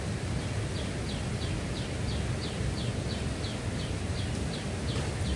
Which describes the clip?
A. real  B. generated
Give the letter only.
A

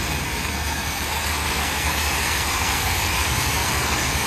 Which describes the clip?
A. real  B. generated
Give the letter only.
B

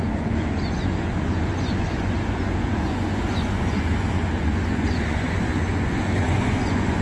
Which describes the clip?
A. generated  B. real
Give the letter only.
A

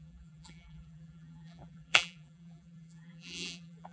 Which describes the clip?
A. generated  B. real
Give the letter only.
A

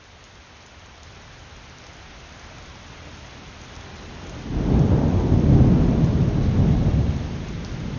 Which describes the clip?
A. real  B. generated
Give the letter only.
A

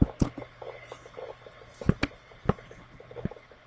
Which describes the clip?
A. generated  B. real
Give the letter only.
B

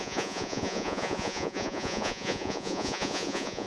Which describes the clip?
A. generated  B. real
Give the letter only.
A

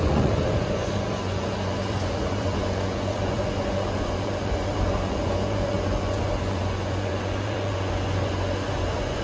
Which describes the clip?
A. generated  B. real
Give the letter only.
A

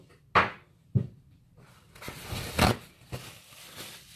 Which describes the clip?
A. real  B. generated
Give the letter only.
A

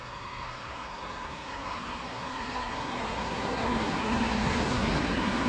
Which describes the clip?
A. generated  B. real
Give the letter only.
A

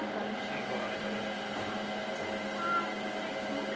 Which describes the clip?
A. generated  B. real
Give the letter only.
B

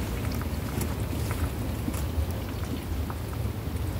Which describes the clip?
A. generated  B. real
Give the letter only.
B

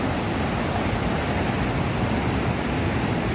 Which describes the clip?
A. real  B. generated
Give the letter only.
A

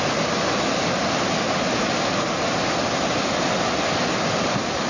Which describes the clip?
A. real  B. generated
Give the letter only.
A